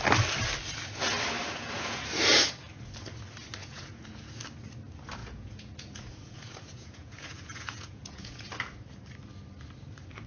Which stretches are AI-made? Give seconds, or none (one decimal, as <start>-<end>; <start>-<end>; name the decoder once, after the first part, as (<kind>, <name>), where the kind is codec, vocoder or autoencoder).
1.4-2.0 (vocoder, Vocos); 3.6-4.3; 5.2-8.5